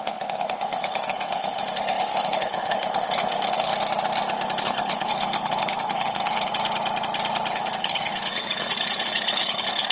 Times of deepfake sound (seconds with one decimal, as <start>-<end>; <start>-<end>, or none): 0.0-1.6; 2.2-3.7; 4.6-6.5; 7.5-9.9